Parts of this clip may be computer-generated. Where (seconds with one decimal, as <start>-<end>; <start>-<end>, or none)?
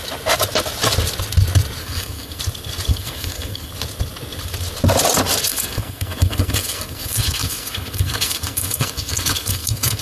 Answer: 1.8-2.4; 2.9-3.7; 5.5-10.0